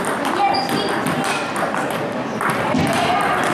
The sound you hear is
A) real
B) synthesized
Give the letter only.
A